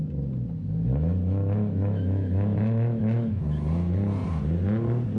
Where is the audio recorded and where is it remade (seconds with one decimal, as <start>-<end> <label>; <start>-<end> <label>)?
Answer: 0.0-0.9 recorded; 0.9-3.4 remade; 3.4-5.2 recorded